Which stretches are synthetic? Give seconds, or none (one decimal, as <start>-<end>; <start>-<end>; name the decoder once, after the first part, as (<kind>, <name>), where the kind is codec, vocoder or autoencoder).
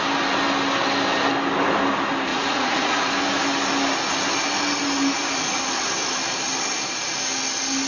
2.3-3.1 (vocoder, Vocos)